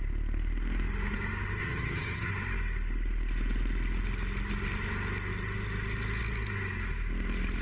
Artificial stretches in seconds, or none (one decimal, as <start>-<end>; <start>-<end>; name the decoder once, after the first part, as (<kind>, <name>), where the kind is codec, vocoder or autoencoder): 1.6-2.3 (vocoder, HiFi-GAN)